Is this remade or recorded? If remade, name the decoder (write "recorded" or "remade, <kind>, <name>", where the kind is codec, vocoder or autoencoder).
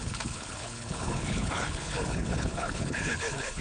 remade, codec, HILCodec